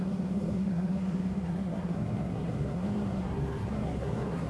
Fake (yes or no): yes